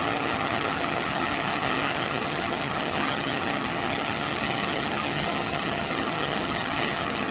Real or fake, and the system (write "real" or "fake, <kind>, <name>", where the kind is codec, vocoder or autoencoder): fake, vocoder, HiFi-GAN